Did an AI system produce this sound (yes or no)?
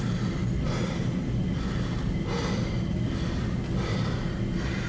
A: no